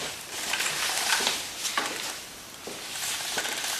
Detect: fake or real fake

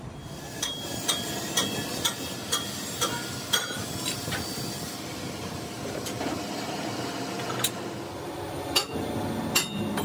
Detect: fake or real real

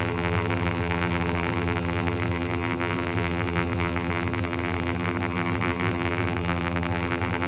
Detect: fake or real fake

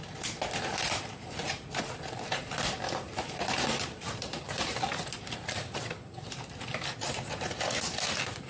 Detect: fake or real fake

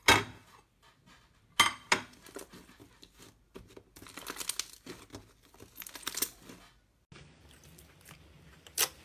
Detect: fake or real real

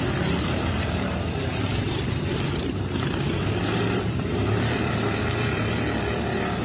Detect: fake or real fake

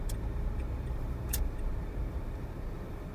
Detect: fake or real fake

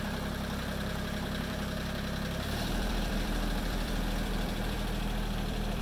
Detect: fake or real fake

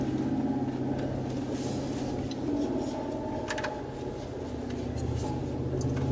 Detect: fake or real real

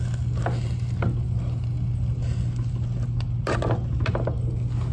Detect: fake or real real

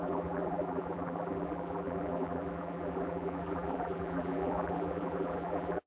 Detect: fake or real fake